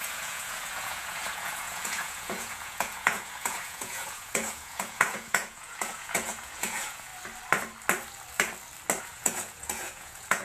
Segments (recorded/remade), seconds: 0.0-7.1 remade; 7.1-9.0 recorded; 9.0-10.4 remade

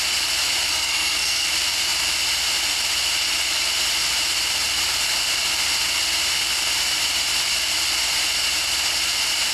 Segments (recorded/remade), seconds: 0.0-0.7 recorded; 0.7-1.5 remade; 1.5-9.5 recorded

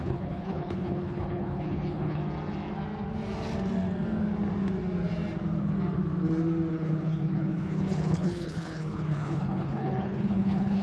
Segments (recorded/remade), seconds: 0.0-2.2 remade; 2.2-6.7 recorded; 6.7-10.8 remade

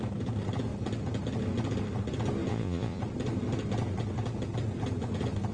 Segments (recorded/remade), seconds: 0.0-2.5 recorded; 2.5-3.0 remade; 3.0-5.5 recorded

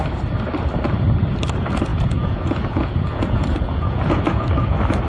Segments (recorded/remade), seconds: 0.0-1.9 recorded; 1.9-4.2 remade; 4.2-5.1 recorded

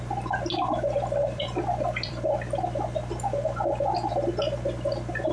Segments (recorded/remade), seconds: 0.0-1.2 recorded; 1.2-4.1 remade; 4.1-5.3 recorded